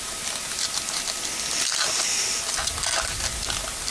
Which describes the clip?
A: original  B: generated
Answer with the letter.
A